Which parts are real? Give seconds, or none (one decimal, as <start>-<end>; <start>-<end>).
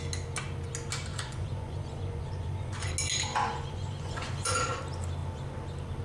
0.0-1.1; 2.9-3.3; 4.8-6.0